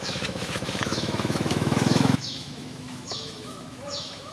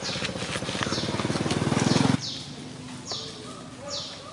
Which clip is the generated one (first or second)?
first